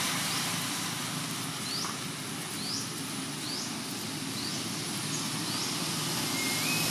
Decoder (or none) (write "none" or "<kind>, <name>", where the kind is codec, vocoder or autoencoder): none